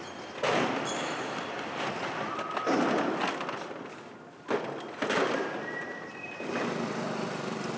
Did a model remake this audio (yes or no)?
no